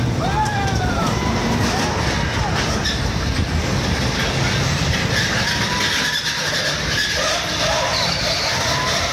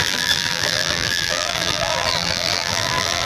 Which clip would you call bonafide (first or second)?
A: first